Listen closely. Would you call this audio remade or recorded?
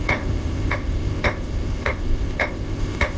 remade